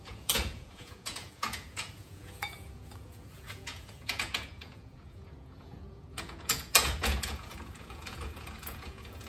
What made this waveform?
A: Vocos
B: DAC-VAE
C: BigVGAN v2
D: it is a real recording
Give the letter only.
A